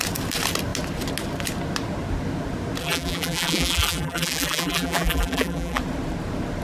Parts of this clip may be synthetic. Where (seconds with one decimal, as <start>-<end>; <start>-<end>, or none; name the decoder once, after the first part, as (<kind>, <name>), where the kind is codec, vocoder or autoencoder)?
2.8-5.8 (vocoder, BigVGAN v2)